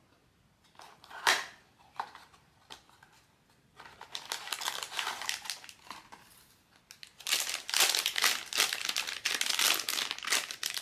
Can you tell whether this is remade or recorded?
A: recorded